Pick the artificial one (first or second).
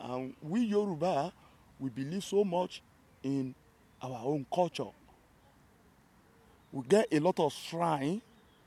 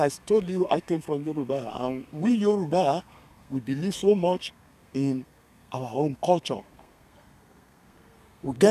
second